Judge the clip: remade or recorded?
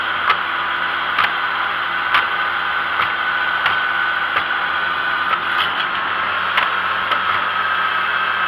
recorded